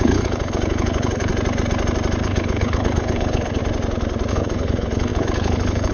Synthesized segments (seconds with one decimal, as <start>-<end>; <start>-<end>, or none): 0.0-1.3; 2.2-3.6; 4.3-5.9